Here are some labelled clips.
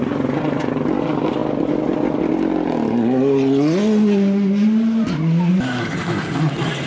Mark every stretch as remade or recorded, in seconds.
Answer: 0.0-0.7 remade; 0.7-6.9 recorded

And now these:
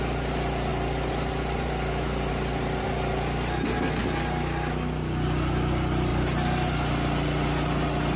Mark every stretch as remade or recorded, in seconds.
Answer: 0.0-8.2 recorded

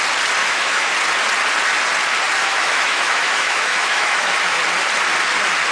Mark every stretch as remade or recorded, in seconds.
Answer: 0.0-0.4 recorded; 0.4-0.9 remade; 0.9-2.4 recorded; 2.4-4.6 remade; 4.6-5.7 recorded

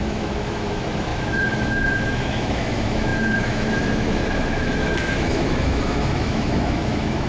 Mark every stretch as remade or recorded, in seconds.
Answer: 0.0-7.3 remade